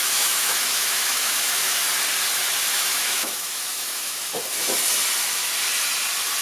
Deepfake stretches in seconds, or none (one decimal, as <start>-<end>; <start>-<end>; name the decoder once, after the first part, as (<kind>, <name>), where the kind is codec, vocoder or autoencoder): 0.0-1.8 (autoencoder, DAC-VAE); 2.7-4.3